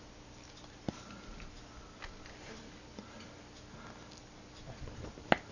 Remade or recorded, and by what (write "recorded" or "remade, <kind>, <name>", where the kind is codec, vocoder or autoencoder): recorded